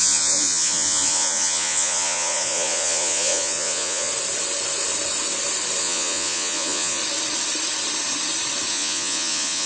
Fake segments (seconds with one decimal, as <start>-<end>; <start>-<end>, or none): 0.0-4.1; 5.8-7.0; 8.7-9.7